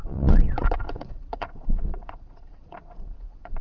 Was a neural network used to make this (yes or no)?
yes